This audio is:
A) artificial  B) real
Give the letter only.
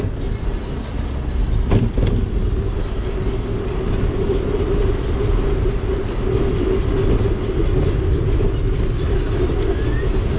B